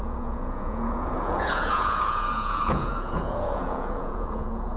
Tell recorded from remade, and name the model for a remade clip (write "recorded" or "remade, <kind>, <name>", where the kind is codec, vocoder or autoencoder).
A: remade, vocoder, Vocos